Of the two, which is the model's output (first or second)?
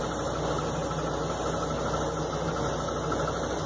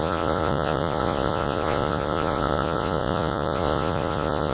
second